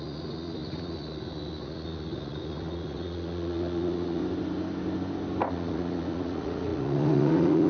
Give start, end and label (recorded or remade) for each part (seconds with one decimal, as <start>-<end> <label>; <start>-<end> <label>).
0.0-4.2 remade; 4.2-5.5 recorded; 5.5-7.7 remade